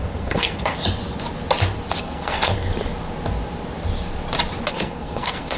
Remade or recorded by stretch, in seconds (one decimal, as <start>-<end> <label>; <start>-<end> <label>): 0.0-0.8 remade; 0.8-2.0 recorded; 2.0-2.7 remade; 2.7-4.7 recorded; 4.7-5.6 remade